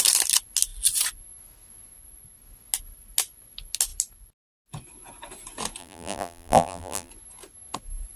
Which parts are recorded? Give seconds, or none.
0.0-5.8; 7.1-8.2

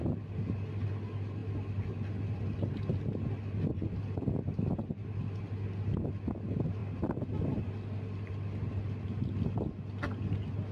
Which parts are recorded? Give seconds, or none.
0.0-10.7

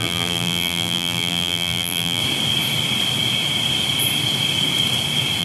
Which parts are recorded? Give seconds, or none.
2.2-5.4

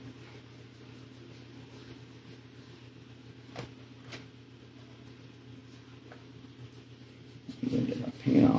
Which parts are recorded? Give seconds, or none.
0.0-8.6

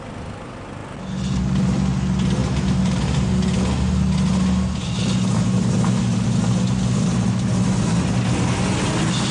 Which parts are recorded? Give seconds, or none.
0.0-2.4; 3.3-9.3